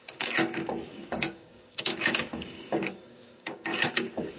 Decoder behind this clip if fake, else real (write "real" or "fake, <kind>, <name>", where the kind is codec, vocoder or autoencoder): fake, codec, DAC